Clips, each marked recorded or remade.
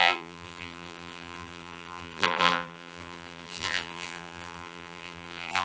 remade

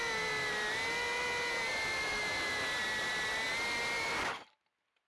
recorded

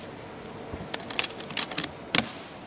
recorded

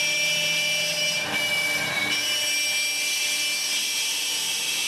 recorded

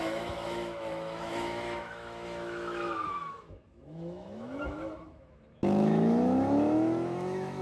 remade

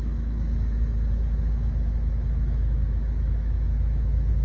remade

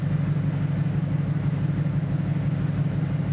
recorded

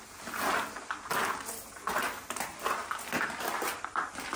recorded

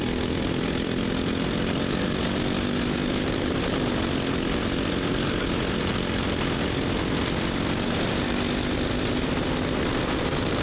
recorded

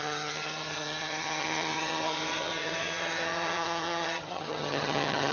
remade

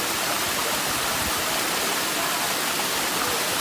recorded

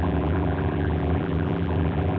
remade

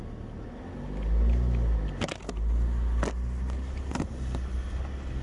recorded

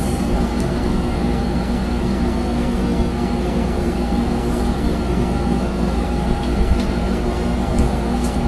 remade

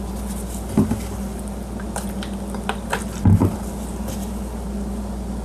recorded